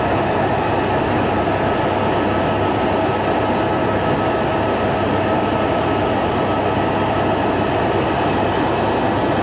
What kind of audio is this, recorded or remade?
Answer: recorded